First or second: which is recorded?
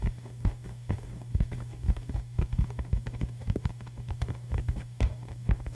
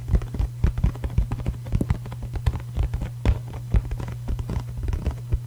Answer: second